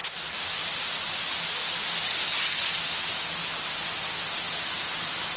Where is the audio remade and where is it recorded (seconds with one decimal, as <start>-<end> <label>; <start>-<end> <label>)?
0.0-5.4 recorded

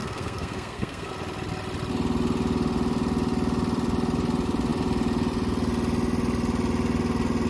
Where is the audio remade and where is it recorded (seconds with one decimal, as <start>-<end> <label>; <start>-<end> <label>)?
0.0-1.1 remade; 1.1-7.5 recorded

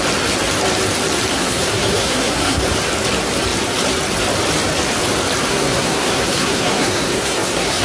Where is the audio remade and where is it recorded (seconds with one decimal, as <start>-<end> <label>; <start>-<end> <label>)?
0.0-1.3 recorded; 1.3-2.6 remade; 2.6-5.5 recorded; 5.5-7.8 remade

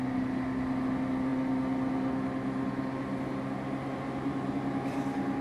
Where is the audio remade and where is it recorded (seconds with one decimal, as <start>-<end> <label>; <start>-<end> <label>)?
0.0-5.4 recorded

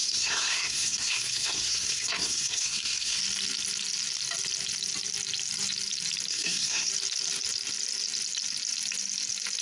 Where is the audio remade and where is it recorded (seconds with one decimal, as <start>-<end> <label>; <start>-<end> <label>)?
0.0-3.2 remade; 3.2-6.3 recorded; 6.3-6.9 remade; 6.9-9.6 recorded